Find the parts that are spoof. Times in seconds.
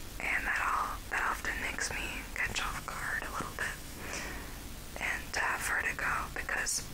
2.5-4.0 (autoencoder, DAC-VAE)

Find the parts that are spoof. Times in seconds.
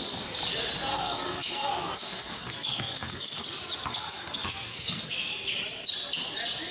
0.9-3.4 (codec, SNAC); 3.9-5.4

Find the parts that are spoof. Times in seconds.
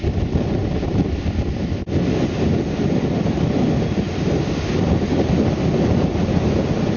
none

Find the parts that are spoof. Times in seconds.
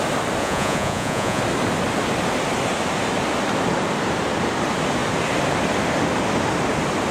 0.4-1.4 (vocoder, Vocos)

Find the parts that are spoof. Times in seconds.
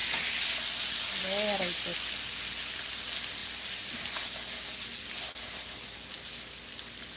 0.0-0.5 (vocoder, BigVGAN v2); 3.4-4.1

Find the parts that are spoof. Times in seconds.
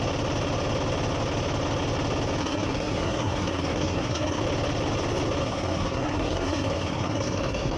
2.4-4.4 (codec, SNAC); 5.4-7.8